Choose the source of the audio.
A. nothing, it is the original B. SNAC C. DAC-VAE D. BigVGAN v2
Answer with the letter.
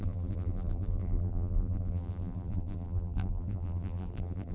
D